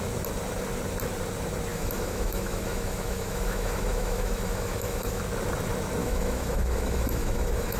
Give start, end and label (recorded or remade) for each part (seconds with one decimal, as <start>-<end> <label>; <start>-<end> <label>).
0.0-1.7 recorded; 1.7-5.2 remade; 5.2-6.0 recorded; 6.0-7.8 remade